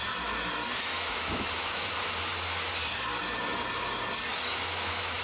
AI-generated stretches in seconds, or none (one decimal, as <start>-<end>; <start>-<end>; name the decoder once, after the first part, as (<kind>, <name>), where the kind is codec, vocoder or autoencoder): 0.9-1.9 (autoencoder, DAC-VAE); 4.3-5.2